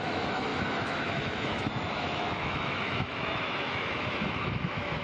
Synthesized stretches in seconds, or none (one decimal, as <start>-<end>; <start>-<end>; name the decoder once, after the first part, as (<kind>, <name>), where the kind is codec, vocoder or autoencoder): 0.0-5.0 (autoencoder, DAC-VAE)